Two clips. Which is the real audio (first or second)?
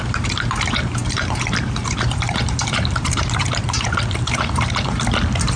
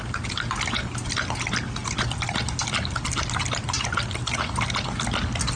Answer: second